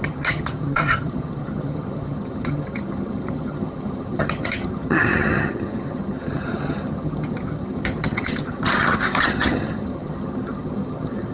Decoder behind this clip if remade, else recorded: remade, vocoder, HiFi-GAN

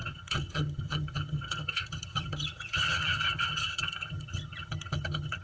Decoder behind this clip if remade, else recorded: remade, vocoder, HiFi-GAN